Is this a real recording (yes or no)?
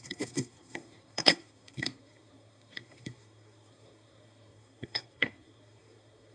no